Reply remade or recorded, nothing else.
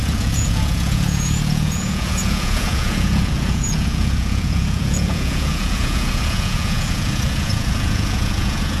remade